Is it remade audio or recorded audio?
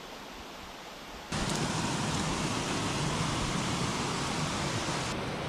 recorded